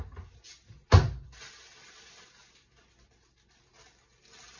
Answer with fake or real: real